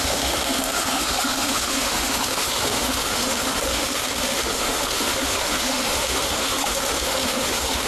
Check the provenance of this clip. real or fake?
fake